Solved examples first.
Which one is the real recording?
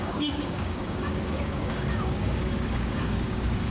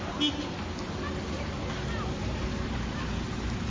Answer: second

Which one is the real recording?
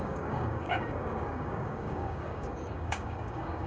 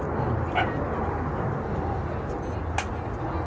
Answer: second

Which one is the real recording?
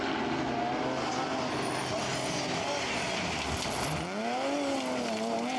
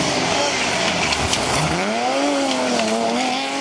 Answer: first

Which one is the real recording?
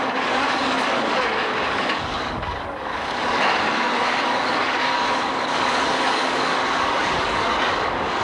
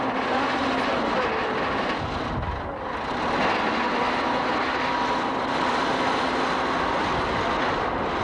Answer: second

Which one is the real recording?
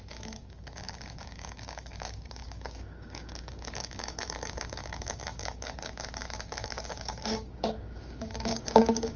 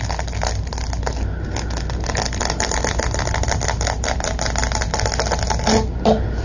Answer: second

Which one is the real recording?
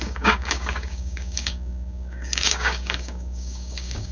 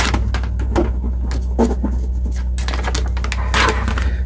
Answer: second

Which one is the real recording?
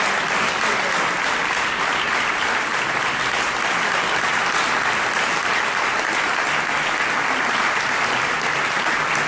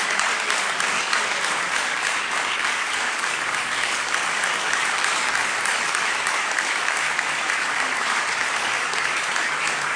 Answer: first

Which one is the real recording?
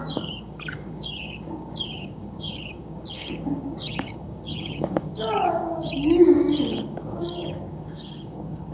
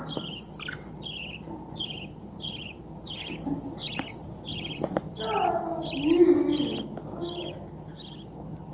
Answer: second